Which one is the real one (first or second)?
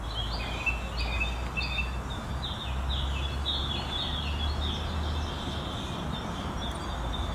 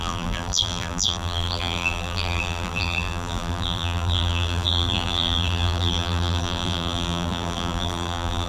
first